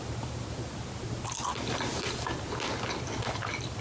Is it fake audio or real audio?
real